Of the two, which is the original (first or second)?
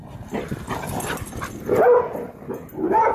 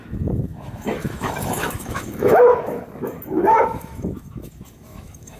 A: first